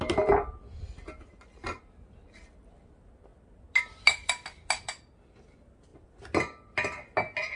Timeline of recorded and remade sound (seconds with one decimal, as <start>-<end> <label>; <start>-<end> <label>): 0.0-7.6 recorded